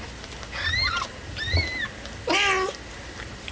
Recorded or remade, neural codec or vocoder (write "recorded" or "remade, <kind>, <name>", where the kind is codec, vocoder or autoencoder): recorded